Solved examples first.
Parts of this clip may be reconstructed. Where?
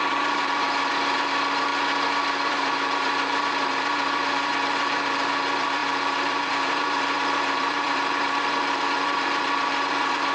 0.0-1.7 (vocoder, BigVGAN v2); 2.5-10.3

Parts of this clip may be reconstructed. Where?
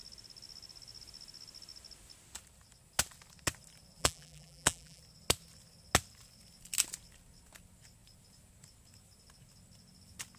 4.0-5.0 (vocoder, BigVGAN v2)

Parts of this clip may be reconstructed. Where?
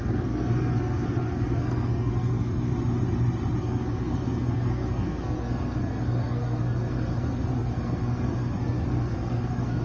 0.0-2.7 (codec, SNAC); 3.6-9.8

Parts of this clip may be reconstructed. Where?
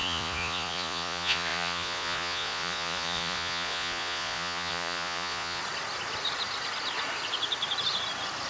0.0-5.6 (vocoder, Vocos)